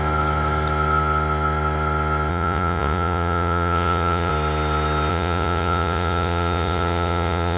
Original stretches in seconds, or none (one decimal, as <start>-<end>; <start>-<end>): 0.0-2.3; 4.3-5.1